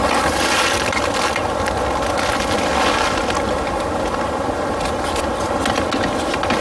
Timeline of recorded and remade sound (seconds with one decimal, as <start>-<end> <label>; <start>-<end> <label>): 0.0-6.6 recorded